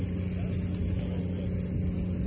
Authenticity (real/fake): real